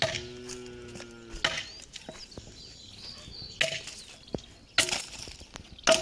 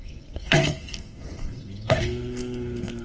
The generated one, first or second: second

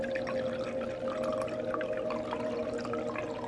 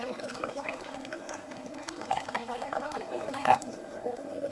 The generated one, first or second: second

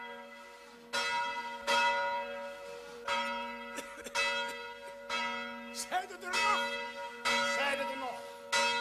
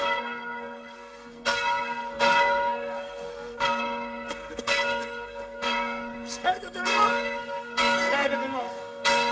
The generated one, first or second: second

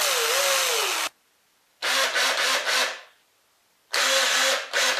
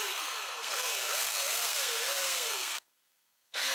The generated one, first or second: second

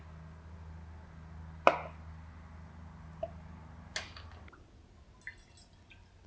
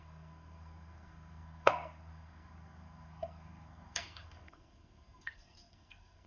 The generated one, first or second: second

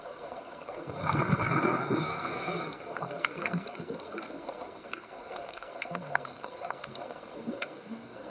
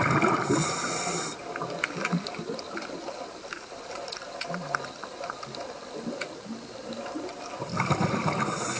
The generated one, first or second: first